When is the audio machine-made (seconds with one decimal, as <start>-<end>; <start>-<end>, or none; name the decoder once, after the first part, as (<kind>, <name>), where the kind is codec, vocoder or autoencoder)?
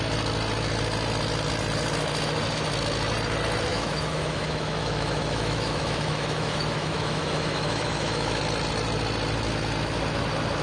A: 3.7-8.4 (autoencoder, DAC-VAE)